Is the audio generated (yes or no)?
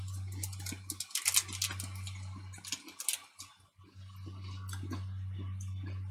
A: no